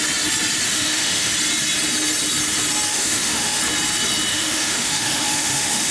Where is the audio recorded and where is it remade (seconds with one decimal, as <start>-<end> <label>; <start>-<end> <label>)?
0.0-0.7 recorded; 0.7-1.3 remade; 1.3-2.9 recorded; 2.9-3.6 remade; 3.6-4.3 recorded; 4.3-5.9 remade